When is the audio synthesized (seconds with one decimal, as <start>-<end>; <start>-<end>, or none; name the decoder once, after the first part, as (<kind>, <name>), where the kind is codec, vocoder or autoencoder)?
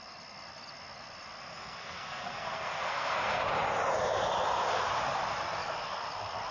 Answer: 1.5-3.5 (codec, SNAC)